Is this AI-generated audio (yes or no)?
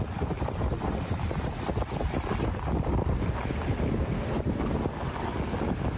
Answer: no